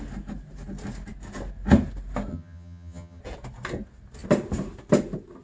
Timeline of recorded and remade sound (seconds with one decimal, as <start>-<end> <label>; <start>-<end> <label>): 0.0-2.3 recorded; 2.3-3.2 remade; 3.2-5.4 recorded